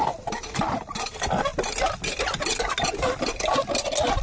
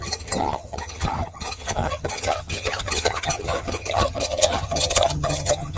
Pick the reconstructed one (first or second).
second